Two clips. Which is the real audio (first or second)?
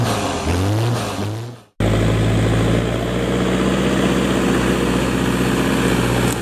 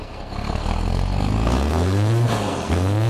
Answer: first